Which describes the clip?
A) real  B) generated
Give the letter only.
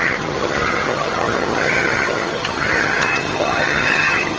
B